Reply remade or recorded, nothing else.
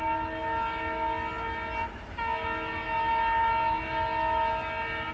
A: recorded